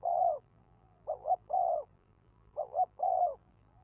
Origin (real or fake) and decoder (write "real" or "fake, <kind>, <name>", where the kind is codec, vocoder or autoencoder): fake, vocoder, BigVGAN v2